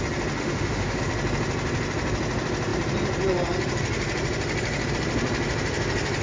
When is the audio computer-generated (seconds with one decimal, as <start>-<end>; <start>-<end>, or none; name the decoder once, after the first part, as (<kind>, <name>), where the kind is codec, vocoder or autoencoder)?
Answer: 0.4-1.0 (autoencoder, DAC-VAE)